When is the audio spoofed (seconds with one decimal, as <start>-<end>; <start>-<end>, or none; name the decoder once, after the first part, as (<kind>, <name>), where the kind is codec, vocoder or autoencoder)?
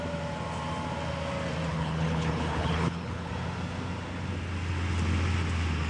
1.7-3.3 (codec, HILCodec)